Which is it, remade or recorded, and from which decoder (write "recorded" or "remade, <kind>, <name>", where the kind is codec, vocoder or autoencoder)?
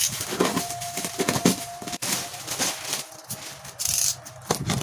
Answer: recorded